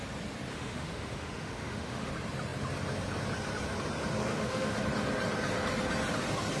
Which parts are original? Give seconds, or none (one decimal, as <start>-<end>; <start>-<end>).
0.0-0.5; 2.1-4.2; 4.8-6.6